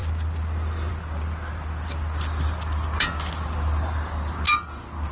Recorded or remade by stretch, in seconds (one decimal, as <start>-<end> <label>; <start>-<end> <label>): 0.0-5.1 recorded